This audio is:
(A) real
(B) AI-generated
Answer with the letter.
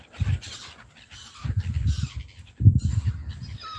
A